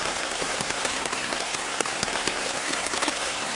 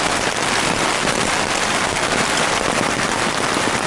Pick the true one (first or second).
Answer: second